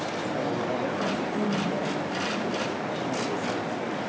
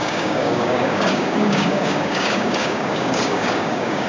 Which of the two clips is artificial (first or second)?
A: second